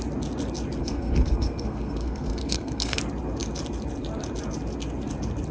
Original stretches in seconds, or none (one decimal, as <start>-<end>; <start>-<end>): 0.0-0.8; 3.0-5.5